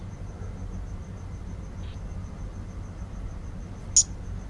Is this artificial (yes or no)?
no